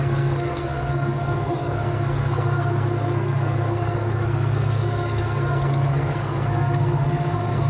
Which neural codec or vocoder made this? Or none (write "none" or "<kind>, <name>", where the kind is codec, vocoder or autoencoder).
codec, SNAC